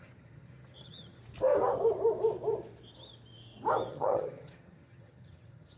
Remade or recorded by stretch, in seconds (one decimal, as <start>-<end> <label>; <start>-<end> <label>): 0.0-1.2 remade; 1.2-3.9 recorded; 3.9-5.8 remade